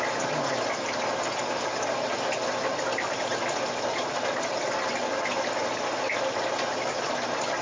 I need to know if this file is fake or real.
real